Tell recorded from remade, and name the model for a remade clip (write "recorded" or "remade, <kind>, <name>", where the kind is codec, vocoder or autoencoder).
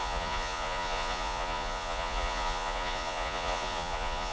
remade, vocoder, Vocos